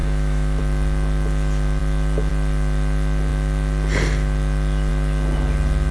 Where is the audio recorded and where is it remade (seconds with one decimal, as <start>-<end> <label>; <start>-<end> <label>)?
0.0-0.6 remade; 0.6-5.9 recorded